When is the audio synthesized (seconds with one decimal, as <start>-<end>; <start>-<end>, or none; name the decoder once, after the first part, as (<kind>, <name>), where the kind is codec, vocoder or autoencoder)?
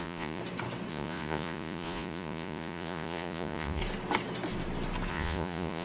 0.0-0.4 (vocoder, Vocos); 0.9-3.8; 5.1-5.8